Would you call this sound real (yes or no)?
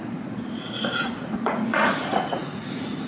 no